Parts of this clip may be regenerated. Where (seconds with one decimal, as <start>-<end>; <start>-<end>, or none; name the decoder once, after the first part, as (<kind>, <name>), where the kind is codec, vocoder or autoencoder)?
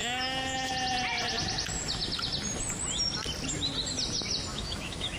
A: 0.0-0.7 (autoencoder, DAC-VAE); 4.5-5.2